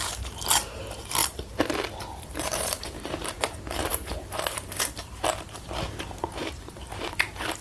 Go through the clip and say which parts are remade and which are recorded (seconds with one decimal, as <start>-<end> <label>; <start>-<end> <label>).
0.0-1.2 remade; 1.2-2.2 recorded; 2.2-7.6 remade